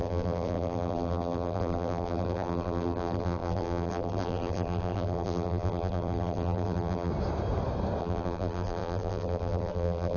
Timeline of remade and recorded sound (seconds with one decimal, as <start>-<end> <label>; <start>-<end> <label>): 0.0-7.1 remade; 7.1-8.0 recorded; 8.0-10.2 remade